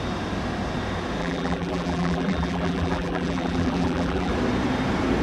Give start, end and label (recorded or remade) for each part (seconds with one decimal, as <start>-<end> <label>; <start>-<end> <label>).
0.0-1.2 recorded; 1.2-4.3 remade; 4.3-5.2 recorded